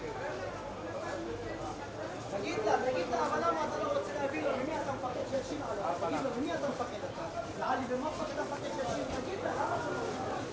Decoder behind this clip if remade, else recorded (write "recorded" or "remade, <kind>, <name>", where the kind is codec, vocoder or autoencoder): recorded